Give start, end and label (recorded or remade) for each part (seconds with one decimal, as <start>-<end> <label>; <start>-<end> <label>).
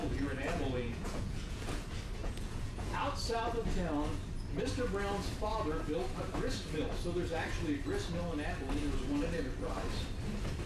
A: 0.0-1.8 remade; 1.8-2.2 recorded; 2.2-2.9 remade; 2.9-10.7 recorded